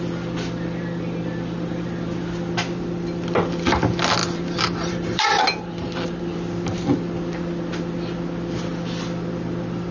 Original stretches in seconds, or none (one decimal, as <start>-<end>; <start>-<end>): 0.0-4.2; 6.2-9.9